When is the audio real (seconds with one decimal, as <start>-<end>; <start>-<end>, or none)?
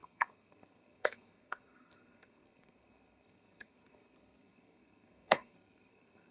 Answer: none